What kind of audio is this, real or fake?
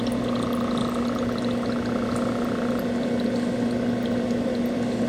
real